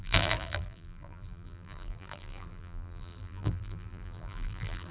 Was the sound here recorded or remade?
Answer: remade